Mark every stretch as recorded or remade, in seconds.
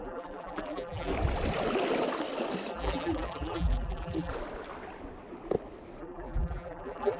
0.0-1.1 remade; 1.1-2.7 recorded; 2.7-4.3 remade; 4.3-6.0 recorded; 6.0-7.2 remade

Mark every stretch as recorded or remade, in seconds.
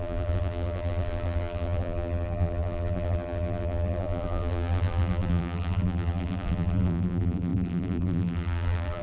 0.0-9.0 remade